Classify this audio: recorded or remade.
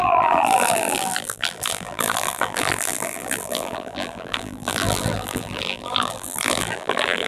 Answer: remade